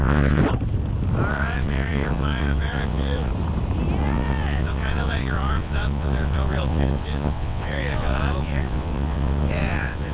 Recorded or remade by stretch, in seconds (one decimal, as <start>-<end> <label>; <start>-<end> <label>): 0.0-0.4 remade; 0.4-1.3 recorded; 1.3-3.3 remade; 3.3-4.0 recorded; 4.0-10.1 remade